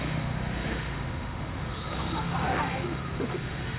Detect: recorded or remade remade